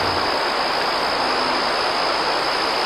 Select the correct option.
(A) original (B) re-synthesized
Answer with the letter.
A